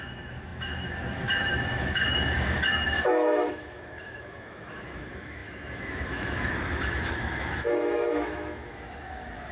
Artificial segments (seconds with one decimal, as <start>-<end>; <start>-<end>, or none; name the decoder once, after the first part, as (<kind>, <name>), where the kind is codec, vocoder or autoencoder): 0.0-9.5 (autoencoder, DAC-VAE)